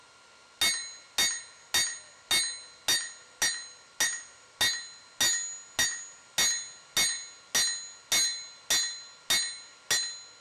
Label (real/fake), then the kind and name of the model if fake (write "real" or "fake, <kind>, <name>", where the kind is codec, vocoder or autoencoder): real